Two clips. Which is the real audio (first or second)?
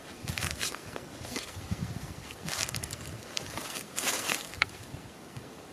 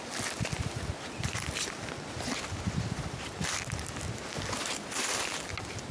second